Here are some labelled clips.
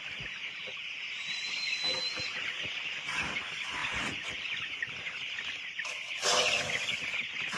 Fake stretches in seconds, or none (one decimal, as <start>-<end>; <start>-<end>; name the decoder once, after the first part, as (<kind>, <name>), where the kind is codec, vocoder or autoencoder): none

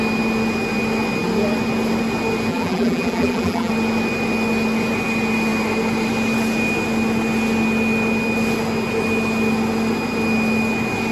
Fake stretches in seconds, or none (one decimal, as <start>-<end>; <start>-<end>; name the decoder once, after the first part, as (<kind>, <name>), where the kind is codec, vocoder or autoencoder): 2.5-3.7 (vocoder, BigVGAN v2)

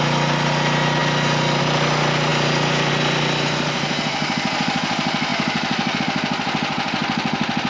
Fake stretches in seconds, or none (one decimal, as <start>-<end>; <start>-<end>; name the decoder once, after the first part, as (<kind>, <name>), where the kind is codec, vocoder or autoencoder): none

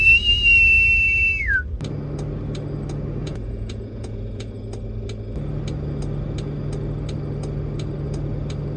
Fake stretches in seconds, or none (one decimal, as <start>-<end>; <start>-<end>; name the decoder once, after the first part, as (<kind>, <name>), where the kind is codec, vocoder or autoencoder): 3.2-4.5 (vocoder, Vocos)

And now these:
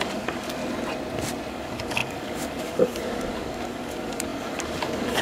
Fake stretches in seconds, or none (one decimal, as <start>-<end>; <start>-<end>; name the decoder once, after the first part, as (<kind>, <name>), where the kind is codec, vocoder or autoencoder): 0.0-0.6 (codec, DAC); 1.5-5.2

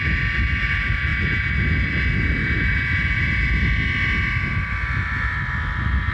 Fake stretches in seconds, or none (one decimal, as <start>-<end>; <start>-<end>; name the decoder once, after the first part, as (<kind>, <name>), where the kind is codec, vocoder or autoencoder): none

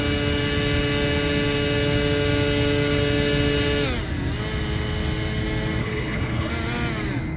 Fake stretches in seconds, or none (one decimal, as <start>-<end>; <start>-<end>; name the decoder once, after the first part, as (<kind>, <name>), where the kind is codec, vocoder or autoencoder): 5.8-6.5 (codec, HILCodec)